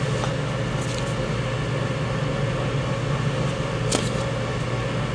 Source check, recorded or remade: recorded